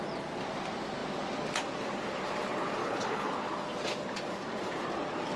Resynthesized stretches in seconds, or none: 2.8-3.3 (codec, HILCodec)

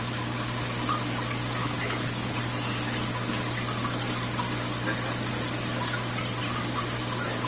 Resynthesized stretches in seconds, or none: 1.6-2.4 (codec, HILCodec)

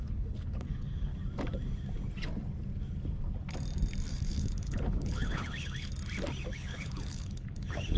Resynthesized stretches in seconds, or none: 0.0-1.1 (codec, HILCodec); 4.1-5.9; 6.5-8.0

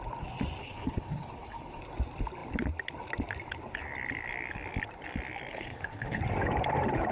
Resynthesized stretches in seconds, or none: 0.6-1.8 (codec, HILCodec); 5.5-6.2

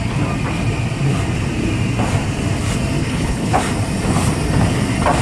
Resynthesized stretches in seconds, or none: 3.0-3.6 (codec, HILCodec)

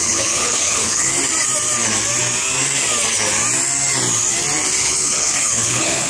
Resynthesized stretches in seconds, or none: 0.0-1.1 (codec, HILCodec); 4.8-6.1

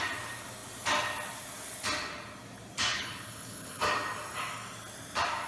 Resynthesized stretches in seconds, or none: 2.9-3.8 (codec, HILCodec)

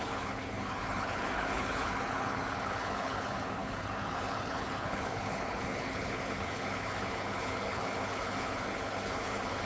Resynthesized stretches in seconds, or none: 0.0-9.7 (codec, HILCodec)